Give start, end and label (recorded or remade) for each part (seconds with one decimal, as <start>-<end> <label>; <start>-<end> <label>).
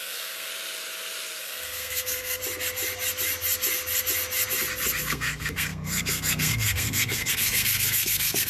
0.0-0.5 remade; 0.5-1.4 recorded; 1.4-2.4 remade; 2.4-5.0 recorded; 5.0-8.5 remade